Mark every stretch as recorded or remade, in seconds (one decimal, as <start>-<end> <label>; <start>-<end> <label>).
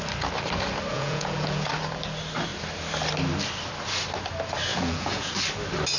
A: 0.0-0.9 recorded; 0.9-1.7 remade; 1.7-4.7 recorded; 4.7-5.3 remade; 5.3-6.0 recorded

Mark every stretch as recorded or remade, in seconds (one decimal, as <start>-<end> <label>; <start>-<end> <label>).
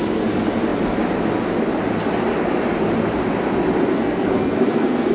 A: 0.0-3.9 recorded; 3.9-5.1 remade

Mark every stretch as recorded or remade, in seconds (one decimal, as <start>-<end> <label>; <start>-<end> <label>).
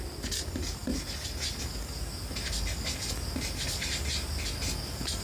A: 0.0-5.2 recorded